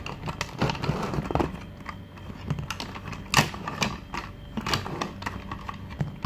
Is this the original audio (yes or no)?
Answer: yes